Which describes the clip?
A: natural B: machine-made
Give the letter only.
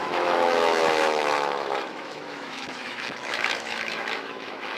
B